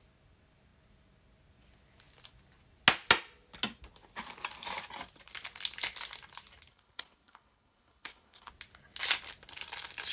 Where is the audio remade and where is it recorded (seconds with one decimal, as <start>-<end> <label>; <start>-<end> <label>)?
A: 0.0-6.7 recorded; 6.7-8.5 remade; 8.5-10.1 recorded